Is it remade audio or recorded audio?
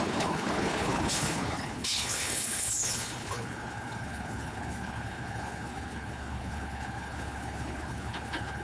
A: remade